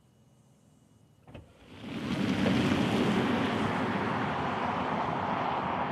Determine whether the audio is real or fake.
real